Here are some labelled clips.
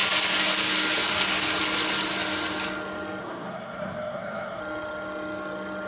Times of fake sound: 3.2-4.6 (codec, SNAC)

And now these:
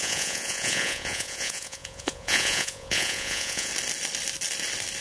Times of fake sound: 0.0-3.7 (vocoder, Vocos)

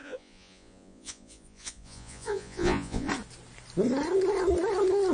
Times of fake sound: 0.0-3.1 (vocoder, Vocos)

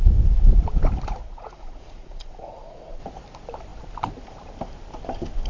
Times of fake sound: 1.2-3.0 (vocoder, Vocos)

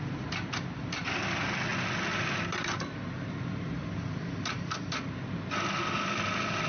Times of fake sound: none

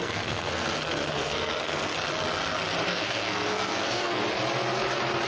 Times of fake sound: 0.0-1.9 (codec, SNAC); 2.9-4.2

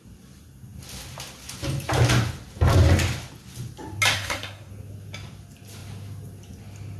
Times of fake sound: 4.1-4.7 (codec, SNAC)

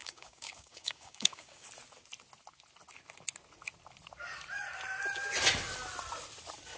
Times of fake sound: 0.0-1.7 (codec, DAC)